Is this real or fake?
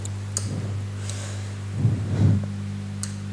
real